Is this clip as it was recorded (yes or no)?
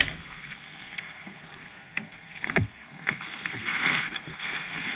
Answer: no